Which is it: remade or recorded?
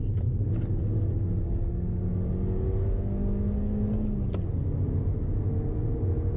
recorded